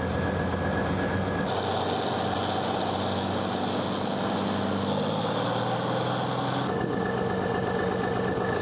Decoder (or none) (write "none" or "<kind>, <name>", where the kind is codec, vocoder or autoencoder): none